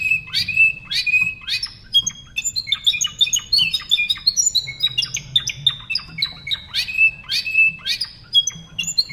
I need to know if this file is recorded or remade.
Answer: recorded